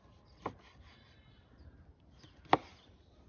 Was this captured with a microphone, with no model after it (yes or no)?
yes